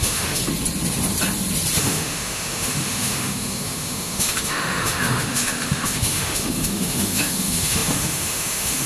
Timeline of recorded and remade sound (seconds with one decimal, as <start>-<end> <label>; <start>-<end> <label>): 0.0-0.4 remade; 0.4-1.8 recorded; 1.8-8.9 remade